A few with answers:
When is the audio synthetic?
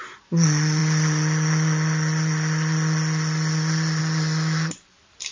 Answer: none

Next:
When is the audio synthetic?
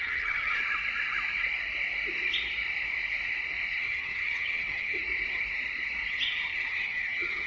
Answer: 0.0-0.6 (vocoder, HiFi-GAN); 3.8-5.0; 6.1-7.5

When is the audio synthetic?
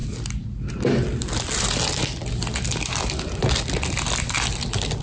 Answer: none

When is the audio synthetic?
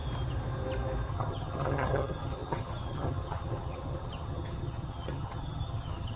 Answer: 1.1-6.2 (vocoder, HiFi-GAN)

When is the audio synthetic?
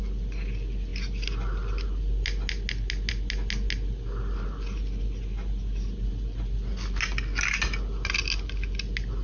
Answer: none